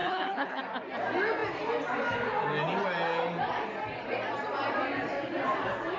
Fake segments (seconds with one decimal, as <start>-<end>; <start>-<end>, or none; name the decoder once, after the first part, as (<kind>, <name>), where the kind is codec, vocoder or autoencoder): 0.0-0.6 (codec, HILCodec)